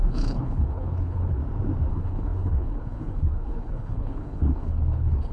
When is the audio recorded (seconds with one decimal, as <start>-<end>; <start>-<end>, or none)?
1.4-1.9